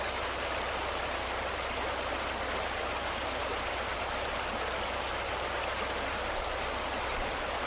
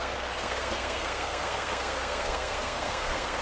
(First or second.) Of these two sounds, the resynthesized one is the second